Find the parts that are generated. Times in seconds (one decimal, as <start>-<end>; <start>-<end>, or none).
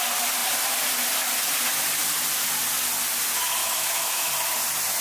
3.6-4.3